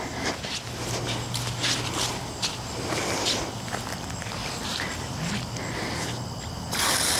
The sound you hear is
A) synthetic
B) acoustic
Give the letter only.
B